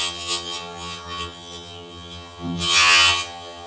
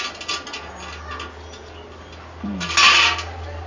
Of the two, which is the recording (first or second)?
second